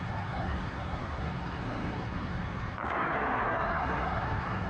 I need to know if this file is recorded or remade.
remade